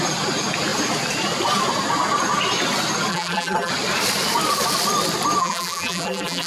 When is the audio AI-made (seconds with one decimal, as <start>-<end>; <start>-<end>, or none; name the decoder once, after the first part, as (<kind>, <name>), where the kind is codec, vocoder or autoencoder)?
3.1-3.7 (vocoder, BigVGAN v2); 5.4-6.5